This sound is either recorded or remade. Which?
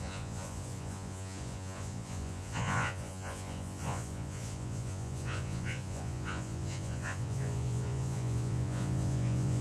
remade